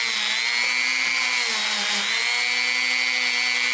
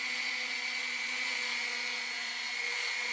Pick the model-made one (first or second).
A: second